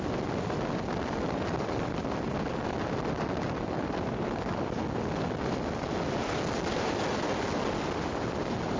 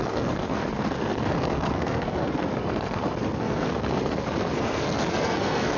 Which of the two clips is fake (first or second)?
second